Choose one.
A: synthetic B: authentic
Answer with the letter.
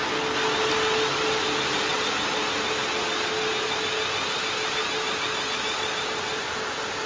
B